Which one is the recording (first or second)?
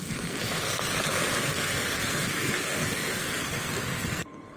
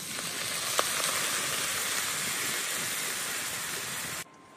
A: second